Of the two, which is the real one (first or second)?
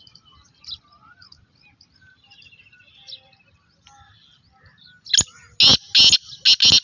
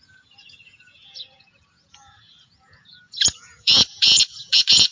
first